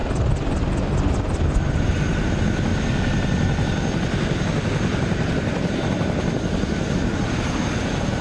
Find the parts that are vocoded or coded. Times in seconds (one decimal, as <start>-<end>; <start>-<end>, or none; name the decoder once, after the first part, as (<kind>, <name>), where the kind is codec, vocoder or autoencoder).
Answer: 2.7-6.9 (vocoder, BigVGAN v2)